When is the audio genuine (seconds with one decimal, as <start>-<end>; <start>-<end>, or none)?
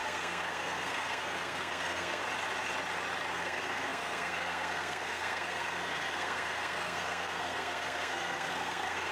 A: 2.2-3.3